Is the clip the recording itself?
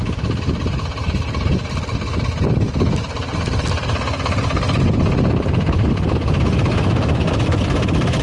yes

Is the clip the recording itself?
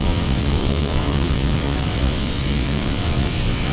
no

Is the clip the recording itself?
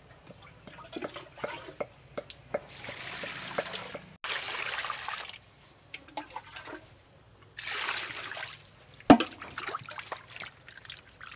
yes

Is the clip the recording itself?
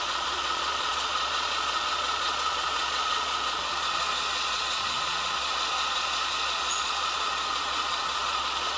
no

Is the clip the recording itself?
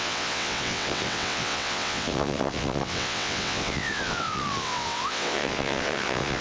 no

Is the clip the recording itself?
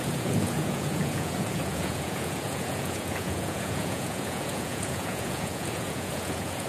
no